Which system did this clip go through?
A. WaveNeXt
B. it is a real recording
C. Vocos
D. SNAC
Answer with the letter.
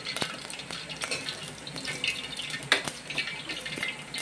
B